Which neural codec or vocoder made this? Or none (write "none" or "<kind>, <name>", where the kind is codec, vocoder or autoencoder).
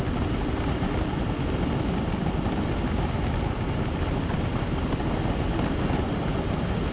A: none